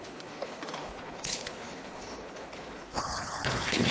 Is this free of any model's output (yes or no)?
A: no